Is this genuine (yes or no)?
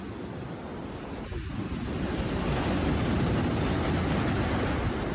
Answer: yes